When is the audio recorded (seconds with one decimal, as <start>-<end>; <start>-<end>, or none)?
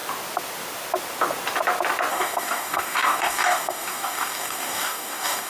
0.0-2.1